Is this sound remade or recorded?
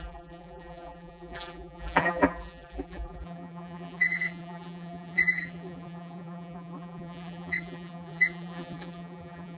remade